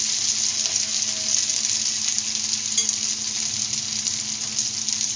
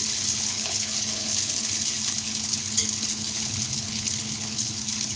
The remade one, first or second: second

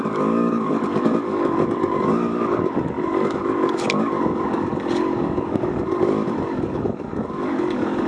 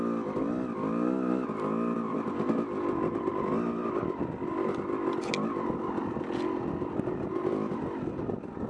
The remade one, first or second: first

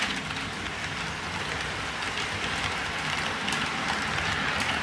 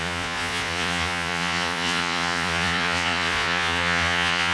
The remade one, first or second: second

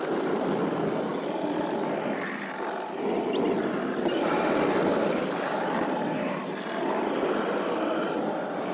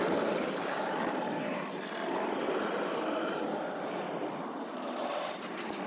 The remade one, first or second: second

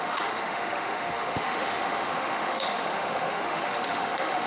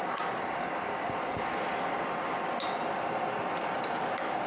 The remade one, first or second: first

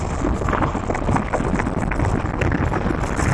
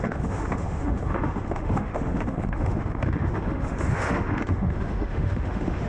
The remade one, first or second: second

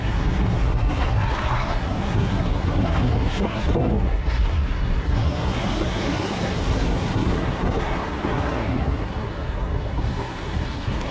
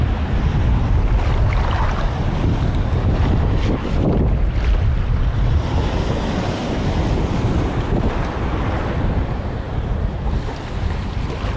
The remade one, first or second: first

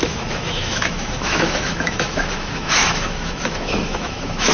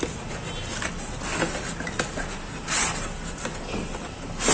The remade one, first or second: first